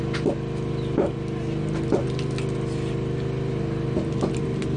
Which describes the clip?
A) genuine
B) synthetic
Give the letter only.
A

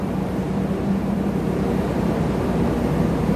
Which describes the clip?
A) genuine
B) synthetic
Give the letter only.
B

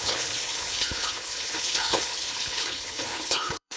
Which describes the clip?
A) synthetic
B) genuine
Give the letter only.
A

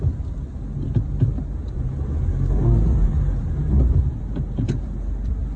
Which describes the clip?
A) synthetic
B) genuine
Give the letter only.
B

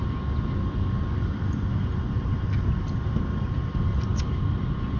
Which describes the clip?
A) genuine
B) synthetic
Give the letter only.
A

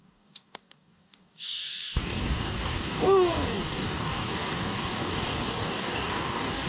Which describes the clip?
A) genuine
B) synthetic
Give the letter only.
B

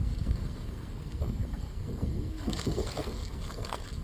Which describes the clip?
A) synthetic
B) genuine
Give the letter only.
A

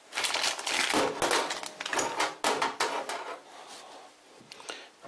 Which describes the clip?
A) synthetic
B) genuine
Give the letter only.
B